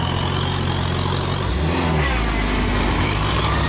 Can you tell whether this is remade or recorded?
recorded